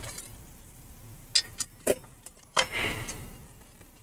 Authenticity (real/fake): real